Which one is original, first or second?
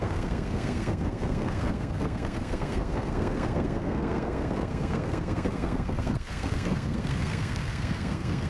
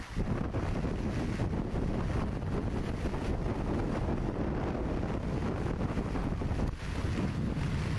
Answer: second